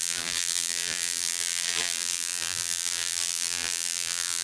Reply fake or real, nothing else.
fake